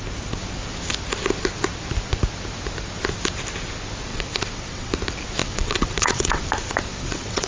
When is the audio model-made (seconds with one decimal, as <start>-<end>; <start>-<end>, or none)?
4.1-4.9; 5.4-6.4; 6.9-7.5